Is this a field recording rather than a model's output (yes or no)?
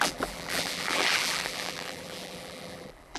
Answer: no